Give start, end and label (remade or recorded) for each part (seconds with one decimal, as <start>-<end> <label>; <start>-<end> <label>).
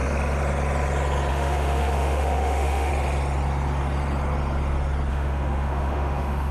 0.0-1.3 recorded; 1.3-2.9 remade; 2.9-5.1 recorded; 5.1-6.5 remade